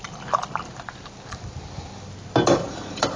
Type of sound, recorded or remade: recorded